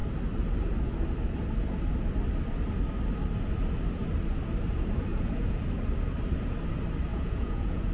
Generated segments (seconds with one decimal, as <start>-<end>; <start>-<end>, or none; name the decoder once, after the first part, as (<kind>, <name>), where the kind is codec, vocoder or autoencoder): 5.1-5.6 (vocoder, Vocos); 7.1-7.9